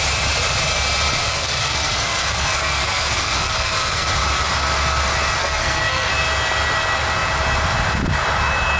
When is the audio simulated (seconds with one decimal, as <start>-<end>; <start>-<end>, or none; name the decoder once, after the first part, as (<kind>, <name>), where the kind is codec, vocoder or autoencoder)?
1.2-4.1 (codec, SNAC); 5.4-6.1